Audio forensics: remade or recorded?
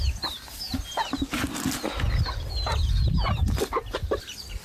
recorded